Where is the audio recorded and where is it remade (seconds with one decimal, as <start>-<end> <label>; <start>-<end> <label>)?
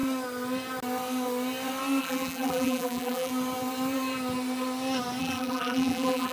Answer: 0.0-2.0 recorded; 2.0-3.3 remade; 3.3-5.2 recorded; 5.2-6.3 remade